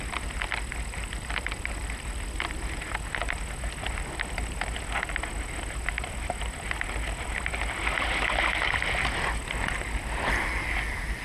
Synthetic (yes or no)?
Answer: no